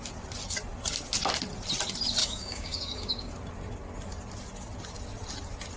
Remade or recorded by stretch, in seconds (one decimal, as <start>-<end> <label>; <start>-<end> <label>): 0.0-2.2 recorded; 2.2-3.3 remade; 3.3-5.8 recorded